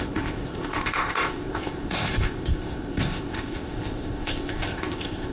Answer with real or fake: fake